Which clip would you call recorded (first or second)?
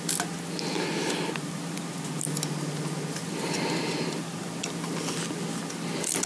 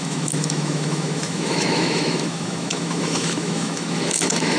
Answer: first